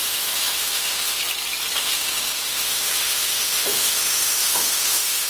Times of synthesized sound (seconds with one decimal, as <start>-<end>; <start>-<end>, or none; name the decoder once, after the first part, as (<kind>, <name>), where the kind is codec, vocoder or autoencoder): 0.0-1.2 (autoencoder, DAC-VAE); 1.8-5.3